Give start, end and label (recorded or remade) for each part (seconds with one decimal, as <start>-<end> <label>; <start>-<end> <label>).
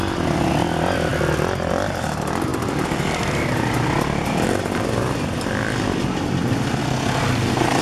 0.0-7.8 recorded